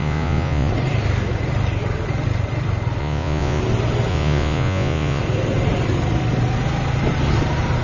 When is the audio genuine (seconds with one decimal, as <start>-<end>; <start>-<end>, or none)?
0.7-3.0; 3.6-4.1; 5.2-7.8